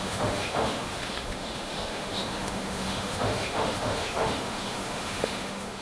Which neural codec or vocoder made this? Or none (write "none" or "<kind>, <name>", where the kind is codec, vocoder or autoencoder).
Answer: autoencoder, DAC-VAE